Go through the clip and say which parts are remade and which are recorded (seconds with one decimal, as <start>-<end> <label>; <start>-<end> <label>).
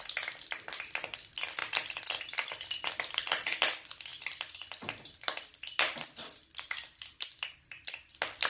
0.0-8.5 recorded